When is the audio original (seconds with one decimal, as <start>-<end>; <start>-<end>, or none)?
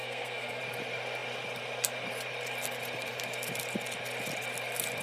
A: 0.6-5.0